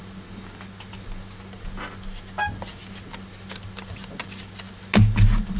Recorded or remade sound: recorded